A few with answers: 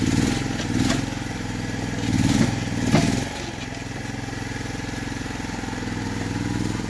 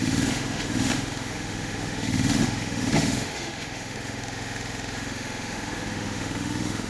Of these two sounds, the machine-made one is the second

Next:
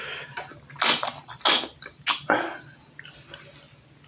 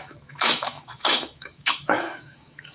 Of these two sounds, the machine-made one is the second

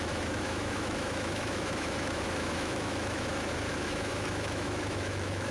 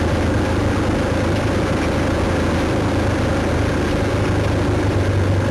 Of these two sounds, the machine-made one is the first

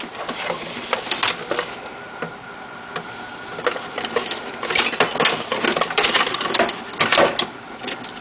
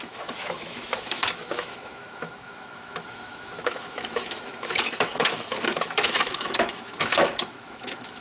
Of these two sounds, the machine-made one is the second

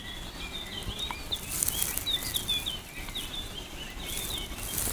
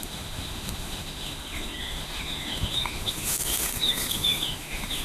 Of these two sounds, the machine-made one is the second